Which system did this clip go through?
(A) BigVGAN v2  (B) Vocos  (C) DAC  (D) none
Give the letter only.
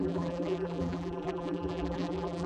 A